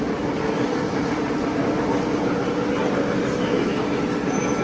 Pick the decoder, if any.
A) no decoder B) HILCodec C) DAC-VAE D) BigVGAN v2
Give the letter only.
A